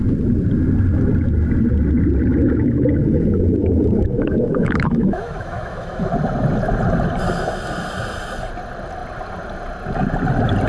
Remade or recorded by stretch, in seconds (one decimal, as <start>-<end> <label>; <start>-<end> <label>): 0.0-2.3 recorded; 2.3-6.1 remade; 6.1-10.7 recorded